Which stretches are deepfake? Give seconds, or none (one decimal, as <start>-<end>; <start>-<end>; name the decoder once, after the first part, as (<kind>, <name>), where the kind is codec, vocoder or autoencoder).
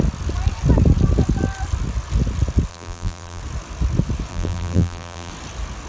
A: 2.7-3.4 (vocoder, BigVGAN v2); 4.3-5.3